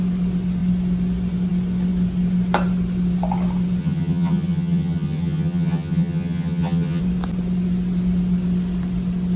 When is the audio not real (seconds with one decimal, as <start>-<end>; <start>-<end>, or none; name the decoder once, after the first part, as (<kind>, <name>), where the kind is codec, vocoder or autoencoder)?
3.8-7.0 (vocoder, HiFi-GAN)